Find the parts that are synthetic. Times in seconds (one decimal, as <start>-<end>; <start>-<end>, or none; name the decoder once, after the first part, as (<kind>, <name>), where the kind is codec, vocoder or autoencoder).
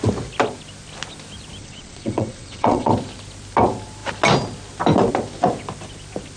1.6-2.9 (vocoder, WaveNeXt)